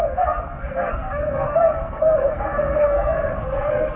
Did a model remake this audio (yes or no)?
yes